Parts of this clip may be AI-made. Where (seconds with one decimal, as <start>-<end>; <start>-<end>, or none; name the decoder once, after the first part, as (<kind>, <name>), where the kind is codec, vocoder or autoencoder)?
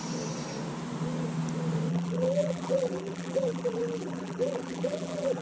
1.9-5.4 (vocoder, BigVGAN v2)